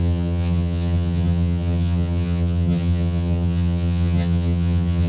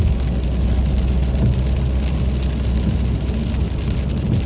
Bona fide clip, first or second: second